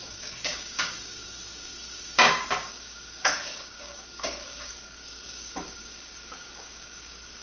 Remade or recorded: remade